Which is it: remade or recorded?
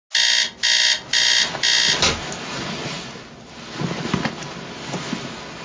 recorded